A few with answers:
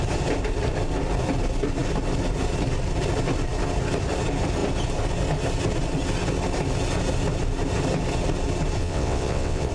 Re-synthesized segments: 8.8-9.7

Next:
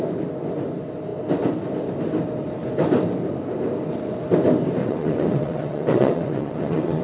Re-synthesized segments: 4.8-7.0

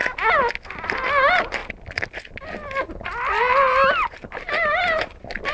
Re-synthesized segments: none